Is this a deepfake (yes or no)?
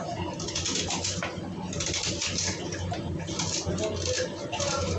no